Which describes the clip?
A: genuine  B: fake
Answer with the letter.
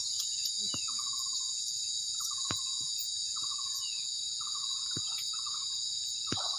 B